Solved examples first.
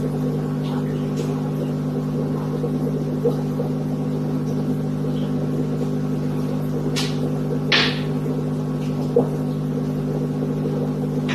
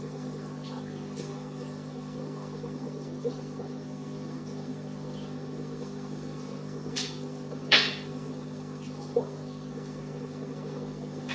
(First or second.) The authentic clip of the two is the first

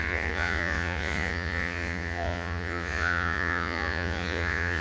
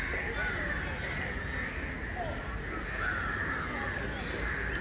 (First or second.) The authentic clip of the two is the second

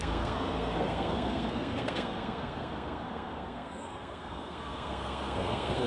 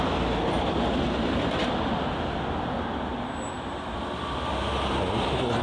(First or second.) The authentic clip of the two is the second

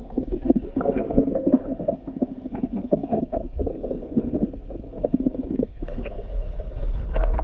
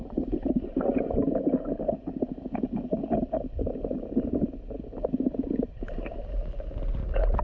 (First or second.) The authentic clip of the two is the second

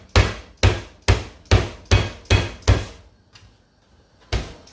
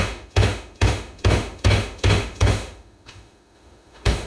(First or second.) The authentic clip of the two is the first